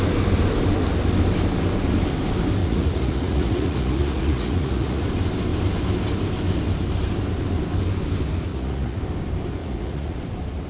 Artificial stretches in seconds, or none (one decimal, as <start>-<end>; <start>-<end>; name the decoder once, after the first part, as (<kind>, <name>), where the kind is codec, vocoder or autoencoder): 2.6-5.0 (vocoder, Vocos); 8.5-9.0; 9.6-10.2